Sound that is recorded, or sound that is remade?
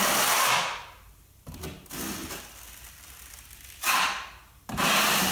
recorded